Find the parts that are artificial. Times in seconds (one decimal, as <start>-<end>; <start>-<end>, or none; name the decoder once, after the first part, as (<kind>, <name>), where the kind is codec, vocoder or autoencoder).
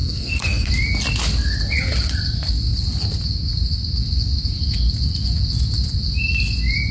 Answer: 0.0-0.7 (codec, SNAC)